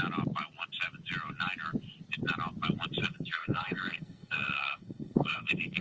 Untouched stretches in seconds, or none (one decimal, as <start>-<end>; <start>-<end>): 0.0-3.0